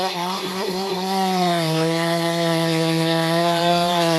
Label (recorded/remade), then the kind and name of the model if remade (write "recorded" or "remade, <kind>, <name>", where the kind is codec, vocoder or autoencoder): remade, codec, SNAC